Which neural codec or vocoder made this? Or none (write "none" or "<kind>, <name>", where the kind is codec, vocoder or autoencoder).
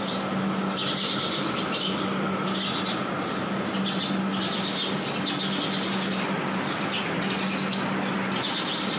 none